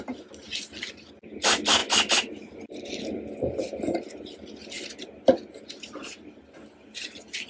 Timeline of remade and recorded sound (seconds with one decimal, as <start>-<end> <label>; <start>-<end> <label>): 0.0-7.5 recorded